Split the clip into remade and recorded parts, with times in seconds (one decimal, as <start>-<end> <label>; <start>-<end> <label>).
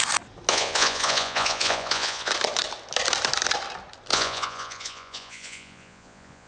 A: 0.0-0.5 recorded; 0.5-2.3 remade; 2.3-4.1 recorded; 4.1-6.5 remade